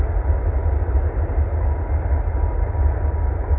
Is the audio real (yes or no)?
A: yes